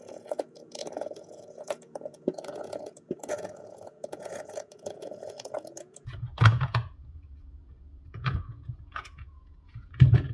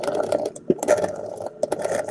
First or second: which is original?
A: second